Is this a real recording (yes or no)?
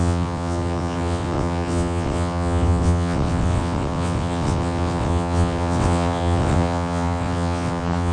no